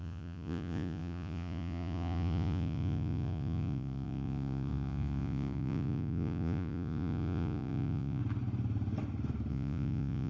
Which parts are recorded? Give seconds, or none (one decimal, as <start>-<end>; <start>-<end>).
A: 8.2-9.5